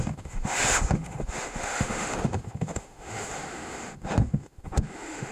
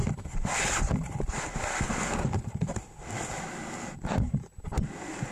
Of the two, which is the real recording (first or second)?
second